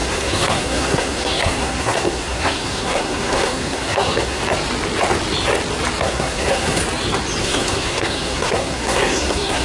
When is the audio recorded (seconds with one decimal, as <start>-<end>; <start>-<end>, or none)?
4.4-6.0; 6.8-7.4